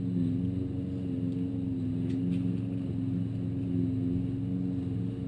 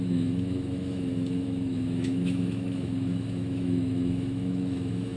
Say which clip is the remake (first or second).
second